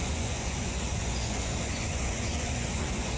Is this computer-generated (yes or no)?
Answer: yes